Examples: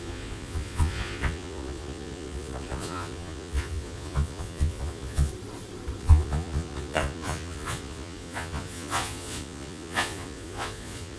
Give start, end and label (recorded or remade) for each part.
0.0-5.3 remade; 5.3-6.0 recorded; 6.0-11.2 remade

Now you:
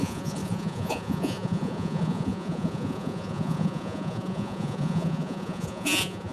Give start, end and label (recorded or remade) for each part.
0.0-6.3 remade

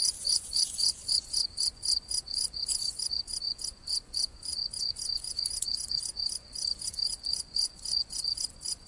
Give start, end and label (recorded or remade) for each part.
0.0-8.9 remade

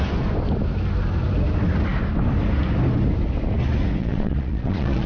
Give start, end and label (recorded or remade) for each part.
0.0-4.0 recorded; 4.0-5.1 remade

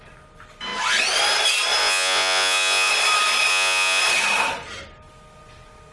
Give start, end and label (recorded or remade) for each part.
0.0-1.8 recorded; 1.8-2.9 remade; 2.9-3.5 recorded; 3.5-4.0 remade; 4.0-5.9 recorded

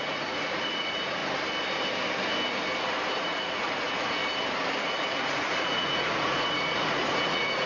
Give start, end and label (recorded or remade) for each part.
0.0-1.2 remade; 1.2-3.2 recorded; 3.2-4.2 remade; 4.2-4.8 recorded; 4.8-7.7 remade